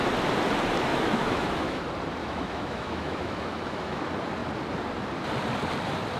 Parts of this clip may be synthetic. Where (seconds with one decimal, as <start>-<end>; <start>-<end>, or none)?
0.9-1.8; 2.2-4.0